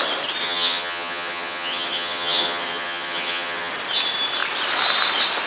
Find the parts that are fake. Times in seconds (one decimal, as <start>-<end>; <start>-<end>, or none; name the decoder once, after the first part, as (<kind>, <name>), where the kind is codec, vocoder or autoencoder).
0.4-3.7 (vocoder, HiFi-GAN)